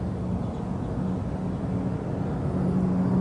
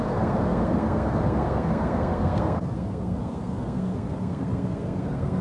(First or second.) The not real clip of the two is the second